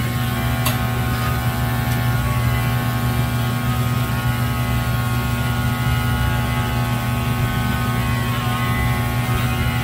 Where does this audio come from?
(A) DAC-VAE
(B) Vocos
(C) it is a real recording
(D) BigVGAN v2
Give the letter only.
C